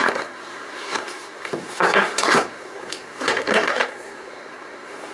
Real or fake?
fake